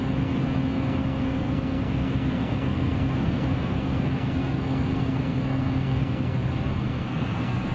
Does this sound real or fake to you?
fake